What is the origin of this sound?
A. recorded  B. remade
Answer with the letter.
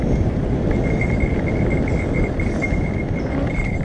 A